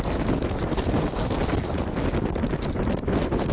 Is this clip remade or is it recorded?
recorded